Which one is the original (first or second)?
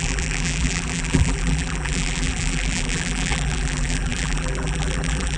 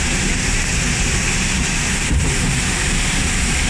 second